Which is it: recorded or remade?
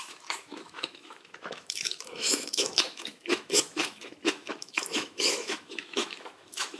remade